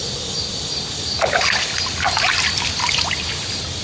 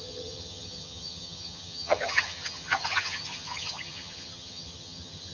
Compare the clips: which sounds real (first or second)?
first